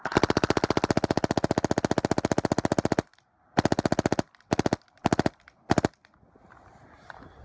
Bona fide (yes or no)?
yes